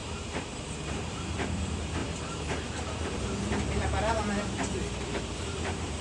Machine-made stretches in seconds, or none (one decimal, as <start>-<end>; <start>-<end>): 0.0-6.0